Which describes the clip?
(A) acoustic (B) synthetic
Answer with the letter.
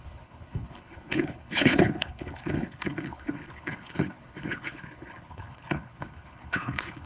B